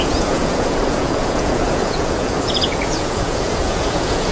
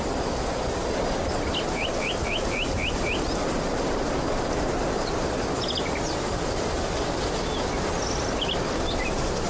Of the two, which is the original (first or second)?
second